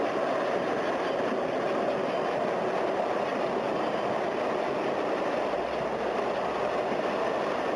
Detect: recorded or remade recorded